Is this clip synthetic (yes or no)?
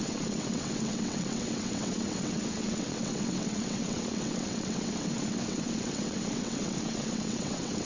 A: yes